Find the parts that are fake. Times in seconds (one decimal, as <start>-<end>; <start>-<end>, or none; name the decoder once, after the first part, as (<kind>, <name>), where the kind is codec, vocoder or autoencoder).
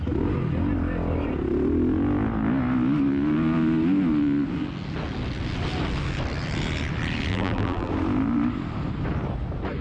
7.3-7.9 (vocoder, BigVGAN v2)